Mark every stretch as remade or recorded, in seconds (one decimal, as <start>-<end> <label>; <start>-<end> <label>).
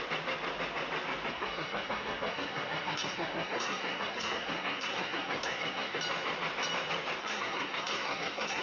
0.0-1.3 recorded; 1.3-6.0 remade; 6.0-7.2 recorded; 7.2-8.6 remade